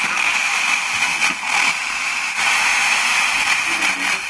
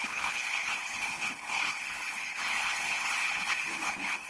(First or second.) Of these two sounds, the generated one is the second